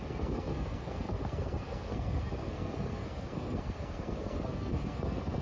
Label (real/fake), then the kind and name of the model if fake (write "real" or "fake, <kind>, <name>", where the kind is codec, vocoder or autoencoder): fake, codec, SNAC